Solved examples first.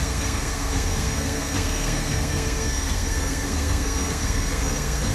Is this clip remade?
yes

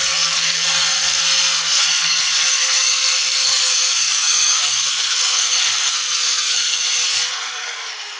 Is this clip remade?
yes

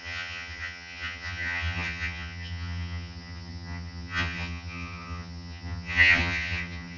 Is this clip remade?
yes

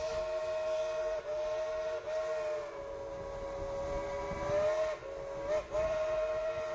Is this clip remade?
no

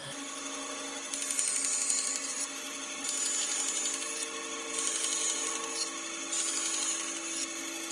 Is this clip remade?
no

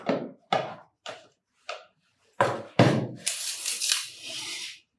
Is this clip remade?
yes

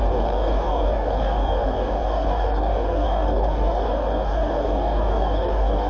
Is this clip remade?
yes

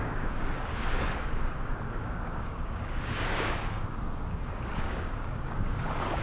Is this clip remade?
yes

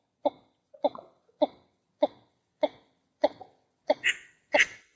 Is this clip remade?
yes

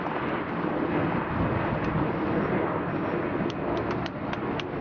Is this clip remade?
no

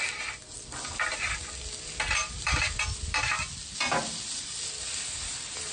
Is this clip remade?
no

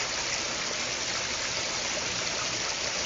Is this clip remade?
no